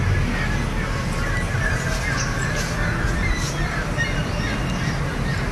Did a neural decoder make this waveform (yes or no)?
no